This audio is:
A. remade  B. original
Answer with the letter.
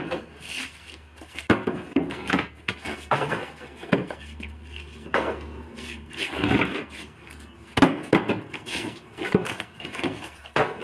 A